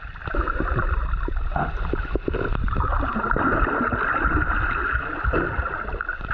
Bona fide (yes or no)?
yes